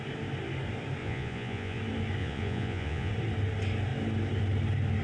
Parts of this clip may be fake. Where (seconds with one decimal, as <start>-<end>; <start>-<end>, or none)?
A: 1.0-1.8; 2.2-3.1